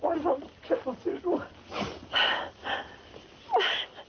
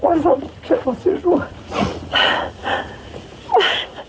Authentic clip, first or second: first